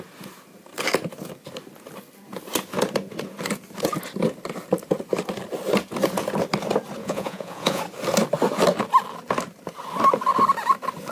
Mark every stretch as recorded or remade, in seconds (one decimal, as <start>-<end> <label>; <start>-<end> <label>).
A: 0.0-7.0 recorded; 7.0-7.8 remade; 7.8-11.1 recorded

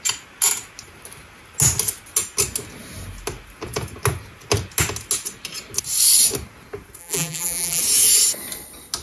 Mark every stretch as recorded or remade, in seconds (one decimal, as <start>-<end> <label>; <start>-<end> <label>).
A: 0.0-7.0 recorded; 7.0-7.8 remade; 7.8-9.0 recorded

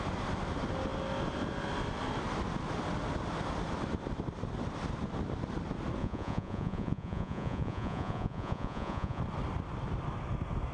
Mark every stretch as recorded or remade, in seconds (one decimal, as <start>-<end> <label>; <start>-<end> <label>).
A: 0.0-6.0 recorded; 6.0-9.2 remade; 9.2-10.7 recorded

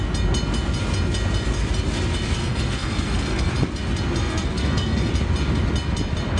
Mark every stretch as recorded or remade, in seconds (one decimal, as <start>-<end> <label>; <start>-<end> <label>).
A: 0.0-2.4 recorded; 2.4-3.5 remade; 3.5-4.2 recorded; 4.2-5.1 remade; 5.1-6.4 recorded